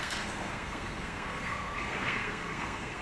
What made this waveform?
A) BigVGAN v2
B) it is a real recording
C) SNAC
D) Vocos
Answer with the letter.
C